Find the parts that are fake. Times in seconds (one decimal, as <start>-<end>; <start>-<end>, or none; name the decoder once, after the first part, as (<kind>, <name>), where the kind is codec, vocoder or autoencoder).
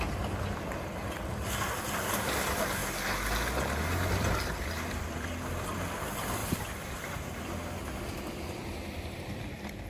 0.0-2.8 (vocoder, BigVGAN v2); 4.1-9.9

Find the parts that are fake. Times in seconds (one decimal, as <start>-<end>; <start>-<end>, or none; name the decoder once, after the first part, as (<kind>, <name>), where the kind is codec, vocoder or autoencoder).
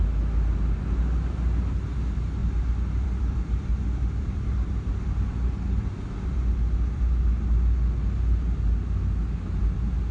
2.4-7.0 (vocoder, BigVGAN v2)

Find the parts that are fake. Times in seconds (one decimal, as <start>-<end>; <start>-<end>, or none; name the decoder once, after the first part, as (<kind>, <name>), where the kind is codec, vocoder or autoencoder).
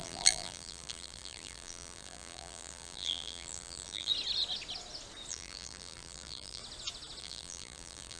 0.0-4.1 (vocoder, BigVGAN v2); 5.3-6.6; 7.2-8.2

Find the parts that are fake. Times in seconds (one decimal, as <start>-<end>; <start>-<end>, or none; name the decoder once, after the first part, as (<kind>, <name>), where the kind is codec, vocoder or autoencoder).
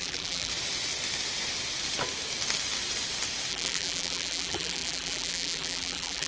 0.0-0.5 (vocoder, BigVGAN v2); 3.5-6.3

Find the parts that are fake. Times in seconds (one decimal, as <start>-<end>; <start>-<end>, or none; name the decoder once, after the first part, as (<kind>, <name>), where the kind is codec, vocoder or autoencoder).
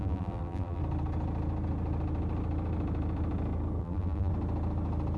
0.0-0.8 (vocoder, BigVGAN v2); 3.8-4.3